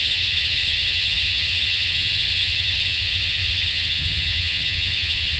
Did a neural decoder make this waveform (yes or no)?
yes